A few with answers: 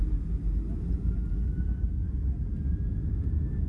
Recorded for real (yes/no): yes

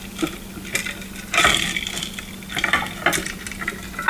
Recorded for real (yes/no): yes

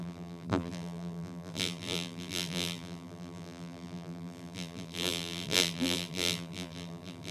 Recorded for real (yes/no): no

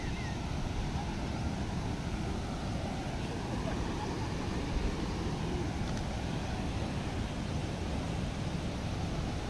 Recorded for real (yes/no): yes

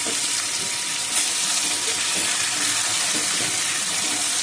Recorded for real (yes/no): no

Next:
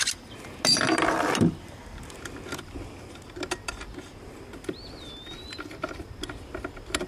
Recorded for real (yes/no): yes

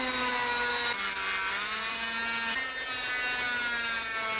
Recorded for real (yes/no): yes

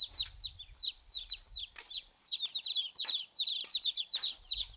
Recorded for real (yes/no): no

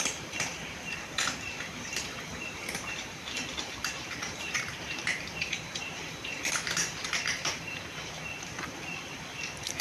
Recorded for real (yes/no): no